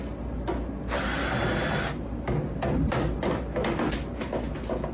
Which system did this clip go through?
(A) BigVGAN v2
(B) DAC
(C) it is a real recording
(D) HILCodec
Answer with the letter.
C